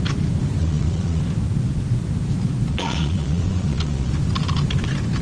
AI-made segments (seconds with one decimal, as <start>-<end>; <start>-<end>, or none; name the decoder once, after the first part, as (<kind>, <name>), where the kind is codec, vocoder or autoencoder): 0.6-1.2 (vocoder, Vocos); 2.7-4.1